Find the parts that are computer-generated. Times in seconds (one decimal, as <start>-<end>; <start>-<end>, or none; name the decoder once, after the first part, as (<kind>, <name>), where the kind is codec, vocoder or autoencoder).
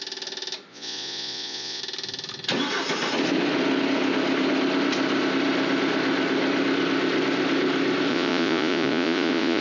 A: 0.7-1.8 (vocoder, Vocos); 8.1-9.6